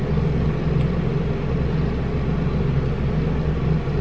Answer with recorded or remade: recorded